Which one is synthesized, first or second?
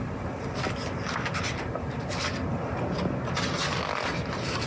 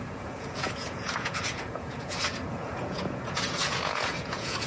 second